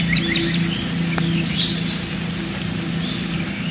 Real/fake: real